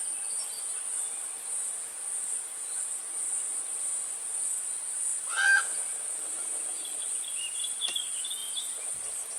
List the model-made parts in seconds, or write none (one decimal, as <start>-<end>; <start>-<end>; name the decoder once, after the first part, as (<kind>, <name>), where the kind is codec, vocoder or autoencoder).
3.5-4.3 (vocoder, BigVGAN v2); 5.1-6.1; 6.7-7.8; 8.4-8.9